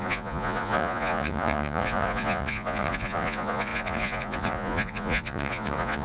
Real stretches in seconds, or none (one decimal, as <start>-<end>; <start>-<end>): none